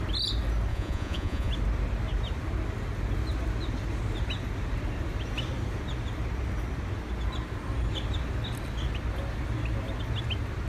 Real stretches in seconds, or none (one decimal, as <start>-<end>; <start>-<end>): 0.0-0.7; 1.5-10.7